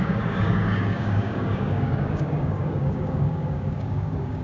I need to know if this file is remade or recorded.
remade